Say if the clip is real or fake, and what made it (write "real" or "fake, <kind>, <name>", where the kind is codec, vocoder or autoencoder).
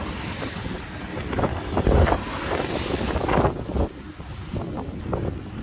real